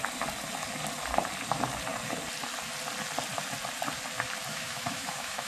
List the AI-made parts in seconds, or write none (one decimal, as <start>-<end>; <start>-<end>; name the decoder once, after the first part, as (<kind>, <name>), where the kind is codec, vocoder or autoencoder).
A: 4.5-5.5 (autoencoder, DAC-VAE)